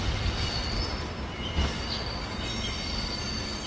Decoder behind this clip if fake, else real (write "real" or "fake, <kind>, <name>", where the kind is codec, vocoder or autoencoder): real